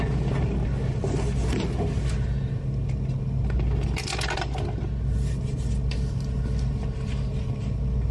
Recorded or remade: recorded